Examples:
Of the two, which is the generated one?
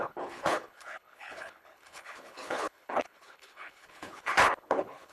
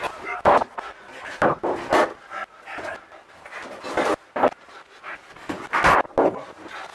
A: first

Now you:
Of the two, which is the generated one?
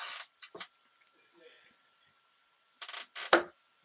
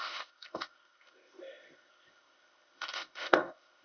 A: second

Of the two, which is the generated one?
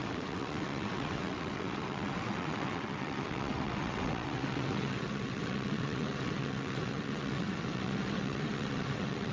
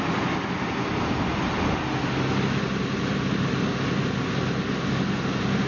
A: first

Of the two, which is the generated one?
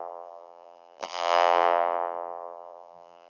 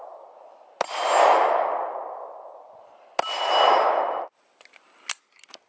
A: first